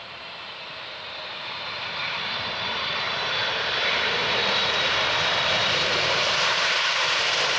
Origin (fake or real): fake